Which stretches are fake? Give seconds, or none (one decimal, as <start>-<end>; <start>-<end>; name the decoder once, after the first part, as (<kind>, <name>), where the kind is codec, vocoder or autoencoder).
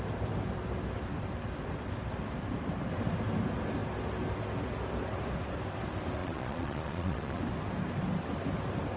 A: 6.2-7.4 (vocoder, Vocos)